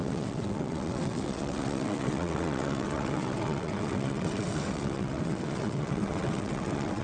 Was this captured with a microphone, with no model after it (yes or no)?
no